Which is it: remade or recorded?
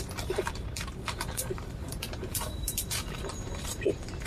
remade